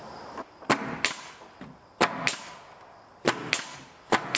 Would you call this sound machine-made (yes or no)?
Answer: no